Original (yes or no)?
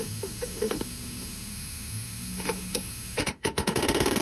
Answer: no